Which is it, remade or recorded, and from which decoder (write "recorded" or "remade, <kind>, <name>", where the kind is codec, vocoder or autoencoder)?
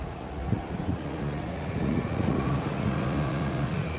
remade, vocoder, Vocos